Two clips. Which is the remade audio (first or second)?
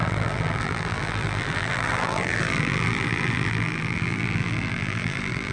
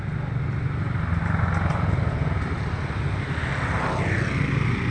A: first